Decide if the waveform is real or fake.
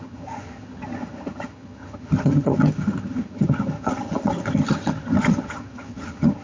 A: fake